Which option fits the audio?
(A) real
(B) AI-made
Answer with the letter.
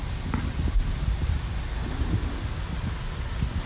B